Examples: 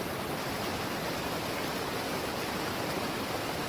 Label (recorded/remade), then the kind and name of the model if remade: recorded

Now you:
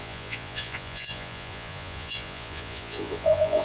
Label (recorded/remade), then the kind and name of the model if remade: remade, vocoder, Vocos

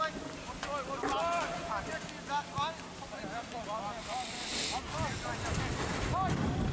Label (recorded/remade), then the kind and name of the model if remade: recorded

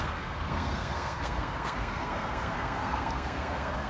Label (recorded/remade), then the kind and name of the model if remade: remade, codec, SNAC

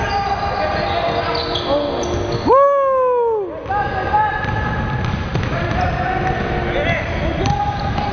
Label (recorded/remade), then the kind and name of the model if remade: recorded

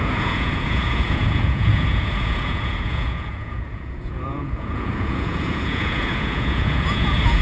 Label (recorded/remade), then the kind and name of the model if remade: remade, vocoder, Vocos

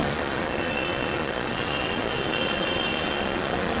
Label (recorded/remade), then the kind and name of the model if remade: remade, vocoder, Vocos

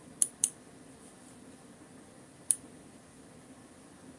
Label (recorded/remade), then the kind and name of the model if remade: remade, vocoder, BigVGAN v2